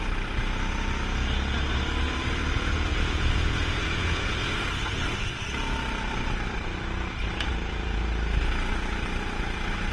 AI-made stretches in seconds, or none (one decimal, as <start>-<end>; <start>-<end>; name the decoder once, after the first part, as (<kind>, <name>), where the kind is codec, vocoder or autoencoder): 2.9-4.3 (vocoder, Vocos); 7.5-8.0